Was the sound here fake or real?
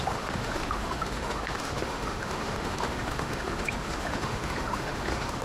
fake